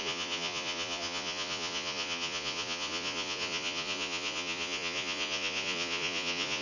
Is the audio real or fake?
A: fake